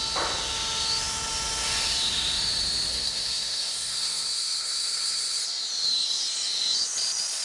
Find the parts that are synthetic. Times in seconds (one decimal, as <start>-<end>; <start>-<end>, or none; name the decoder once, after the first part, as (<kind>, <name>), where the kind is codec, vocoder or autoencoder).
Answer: 2.9-5.4 (codec, SNAC)